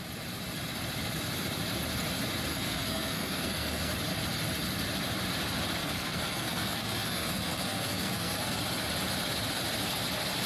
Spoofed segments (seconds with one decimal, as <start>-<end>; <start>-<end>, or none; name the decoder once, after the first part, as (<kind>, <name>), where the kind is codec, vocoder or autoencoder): 2.5-3.9 (codec, SNAC); 5.8-8.6